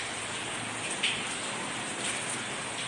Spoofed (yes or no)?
no